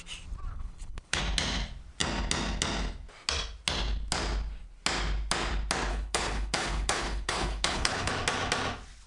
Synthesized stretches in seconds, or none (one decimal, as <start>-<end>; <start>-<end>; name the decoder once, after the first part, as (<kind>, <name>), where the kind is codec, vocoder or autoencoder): 0.5-1.2 (codec, HILCodec); 5.9-8.1